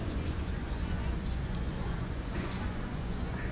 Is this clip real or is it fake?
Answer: fake